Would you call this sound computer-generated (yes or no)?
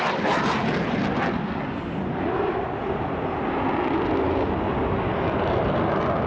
no